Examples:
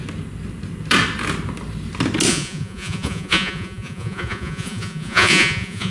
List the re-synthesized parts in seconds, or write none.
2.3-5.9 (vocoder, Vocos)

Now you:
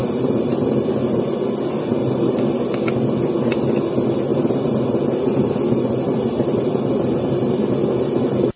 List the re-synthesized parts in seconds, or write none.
0.0-1.2 (vocoder, BigVGAN v2); 4.3-4.8

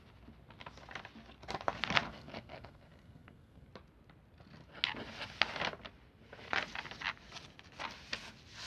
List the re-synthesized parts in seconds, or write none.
2.1-3.7 (codec, SNAC)

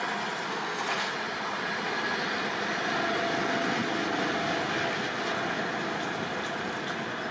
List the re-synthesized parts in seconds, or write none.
0.5-1.1 (codec, SNAC)

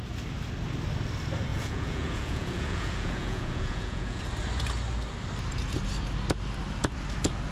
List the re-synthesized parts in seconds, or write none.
1.5-4.2 (vocoder, Vocos)

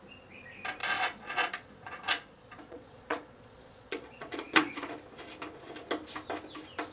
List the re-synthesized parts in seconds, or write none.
0.8-4.9 (vocoder, Vocos)

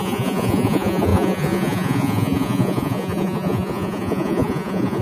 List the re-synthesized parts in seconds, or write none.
0.0-5.0 (vocoder, Vocos)